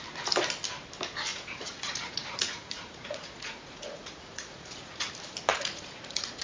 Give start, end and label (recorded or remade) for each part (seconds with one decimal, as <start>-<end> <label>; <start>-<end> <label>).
0.0-1.3 recorded; 1.3-5.1 remade; 5.1-5.5 recorded; 5.5-6.4 remade